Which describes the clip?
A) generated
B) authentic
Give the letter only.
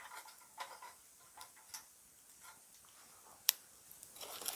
A